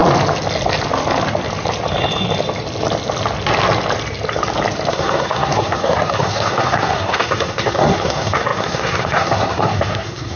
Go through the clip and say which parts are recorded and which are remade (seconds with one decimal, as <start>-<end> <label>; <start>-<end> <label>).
0.0-4.9 recorded; 4.9-10.4 remade